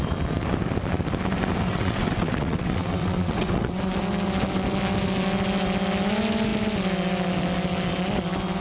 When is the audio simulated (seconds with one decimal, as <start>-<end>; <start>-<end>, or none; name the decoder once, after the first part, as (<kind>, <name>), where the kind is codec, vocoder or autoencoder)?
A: 1.7-3.8 (vocoder, WaveNeXt)